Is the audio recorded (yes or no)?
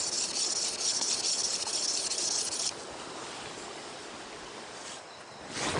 yes